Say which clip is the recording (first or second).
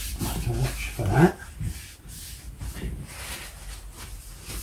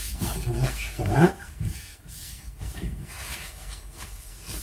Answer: first